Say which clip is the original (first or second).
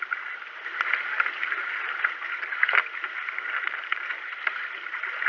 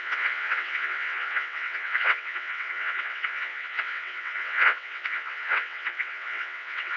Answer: first